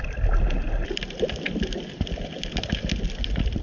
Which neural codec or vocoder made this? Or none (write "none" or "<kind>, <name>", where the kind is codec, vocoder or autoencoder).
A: none